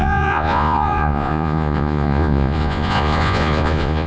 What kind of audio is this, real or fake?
fake